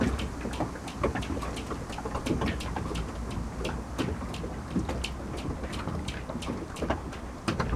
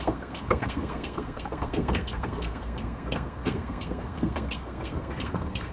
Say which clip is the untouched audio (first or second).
first